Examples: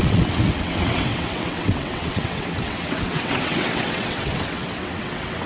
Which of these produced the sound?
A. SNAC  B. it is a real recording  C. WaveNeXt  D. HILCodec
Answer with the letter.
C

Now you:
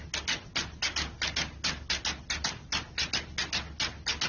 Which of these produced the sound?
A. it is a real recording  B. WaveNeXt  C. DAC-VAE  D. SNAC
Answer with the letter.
A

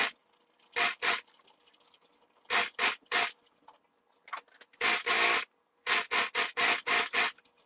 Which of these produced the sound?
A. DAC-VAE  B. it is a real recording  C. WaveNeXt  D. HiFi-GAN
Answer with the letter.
B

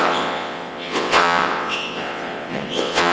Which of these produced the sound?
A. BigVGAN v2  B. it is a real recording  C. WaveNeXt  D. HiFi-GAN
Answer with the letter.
C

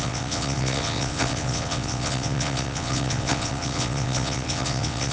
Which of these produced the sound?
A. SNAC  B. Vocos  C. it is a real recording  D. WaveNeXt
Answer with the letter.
D